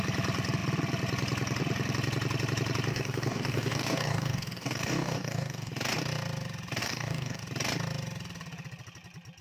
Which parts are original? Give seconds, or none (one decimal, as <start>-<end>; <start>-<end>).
0.0-2.9; 5.7-6.8; 7.4-9.4

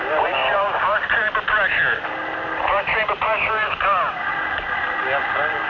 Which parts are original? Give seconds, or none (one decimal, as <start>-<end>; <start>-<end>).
0.0-5.7